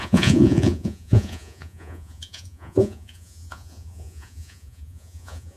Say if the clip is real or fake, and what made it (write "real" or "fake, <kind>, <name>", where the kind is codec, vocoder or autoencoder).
fake, vocoder, Vocos